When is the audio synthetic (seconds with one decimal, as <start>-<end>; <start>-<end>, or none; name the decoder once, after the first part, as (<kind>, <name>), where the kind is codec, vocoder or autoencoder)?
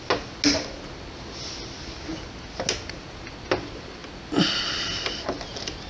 none